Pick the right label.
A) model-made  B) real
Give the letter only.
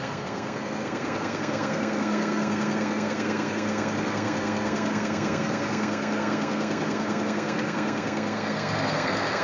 A